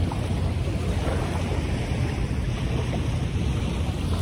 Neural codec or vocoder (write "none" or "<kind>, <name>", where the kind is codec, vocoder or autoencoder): none